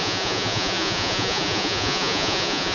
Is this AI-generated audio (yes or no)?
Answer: yes